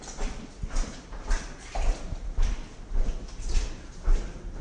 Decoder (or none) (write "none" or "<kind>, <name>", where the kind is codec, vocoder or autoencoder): none